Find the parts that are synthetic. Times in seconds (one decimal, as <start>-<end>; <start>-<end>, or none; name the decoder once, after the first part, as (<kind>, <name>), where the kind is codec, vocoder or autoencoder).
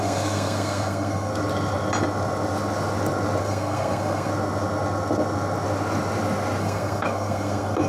0.0-1.3 (codec, SNAC); 3.4-4.3; 6.6-7.9